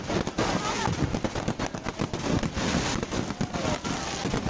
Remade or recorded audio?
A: recorded